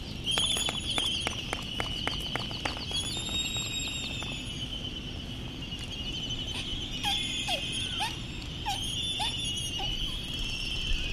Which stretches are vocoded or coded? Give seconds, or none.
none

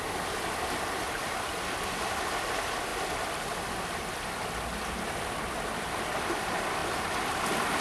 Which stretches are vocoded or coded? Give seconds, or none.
none

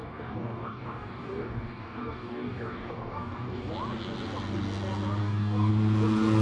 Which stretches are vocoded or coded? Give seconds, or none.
0.0-3.7 (codec, DAC); 5.2-5.7